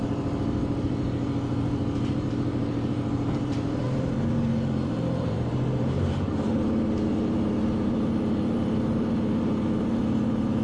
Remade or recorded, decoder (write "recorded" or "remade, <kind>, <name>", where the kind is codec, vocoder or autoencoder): remade, vocoder, BigVGAN v2